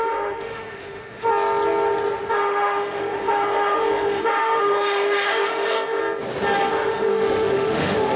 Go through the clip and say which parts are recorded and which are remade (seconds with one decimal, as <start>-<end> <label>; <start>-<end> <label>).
0.0-1.3 remade; 1.3-2.3 recorded; 2.3-6.0 remade; 6.0-6.7 recorded; 6.7-8.2 remade